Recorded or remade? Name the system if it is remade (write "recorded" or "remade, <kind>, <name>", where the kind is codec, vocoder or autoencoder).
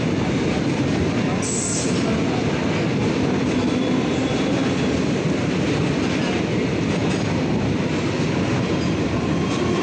recorded